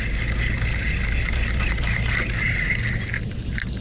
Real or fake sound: real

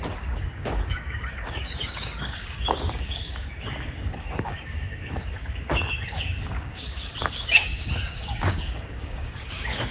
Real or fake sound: fake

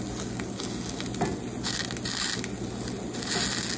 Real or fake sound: real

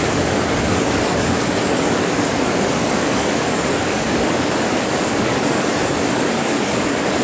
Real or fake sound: fake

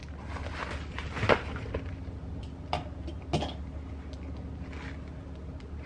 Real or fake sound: real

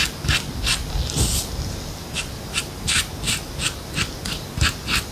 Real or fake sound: real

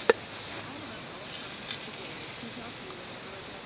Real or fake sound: real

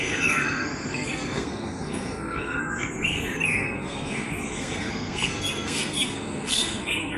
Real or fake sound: fake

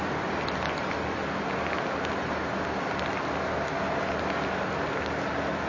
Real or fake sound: real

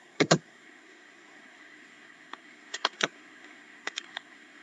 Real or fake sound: fake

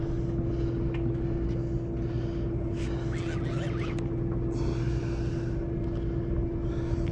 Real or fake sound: real